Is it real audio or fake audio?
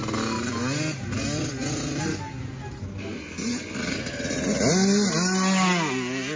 real